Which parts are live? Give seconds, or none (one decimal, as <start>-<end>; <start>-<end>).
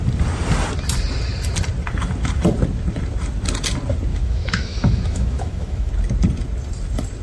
0.0-4.1; 5.9-7.2